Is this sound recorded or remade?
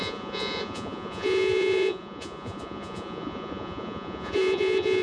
remade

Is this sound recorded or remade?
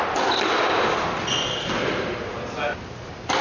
recorded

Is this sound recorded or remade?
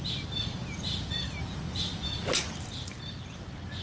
recorded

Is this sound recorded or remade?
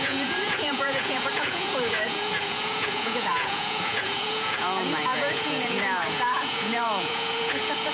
remade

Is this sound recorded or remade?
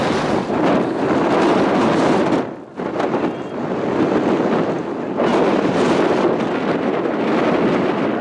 recorded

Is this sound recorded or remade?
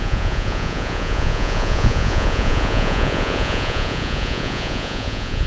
remade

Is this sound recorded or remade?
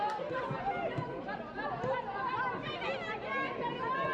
recorded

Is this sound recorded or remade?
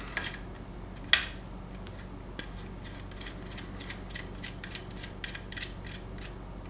recorded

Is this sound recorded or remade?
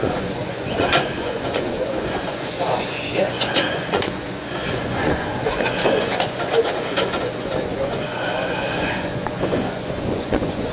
remade